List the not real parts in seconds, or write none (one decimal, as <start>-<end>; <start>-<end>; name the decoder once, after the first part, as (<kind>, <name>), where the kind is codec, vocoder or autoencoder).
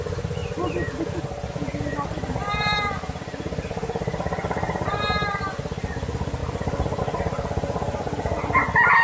0.4-5.0 (vocoder, BigVGAN v2)